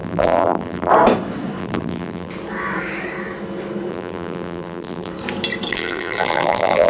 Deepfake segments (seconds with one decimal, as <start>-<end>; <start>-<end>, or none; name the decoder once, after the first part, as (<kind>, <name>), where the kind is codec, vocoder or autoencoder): 0.0-0.9 (vocoder, BigVGAN v2); 1.6-2.3; 3.9-5.1; 5.7-6.9